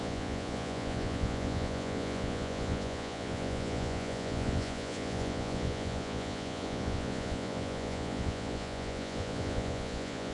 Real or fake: fake